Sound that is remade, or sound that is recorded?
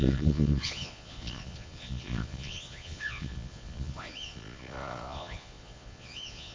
remade